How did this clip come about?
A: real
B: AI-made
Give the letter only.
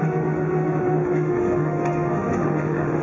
B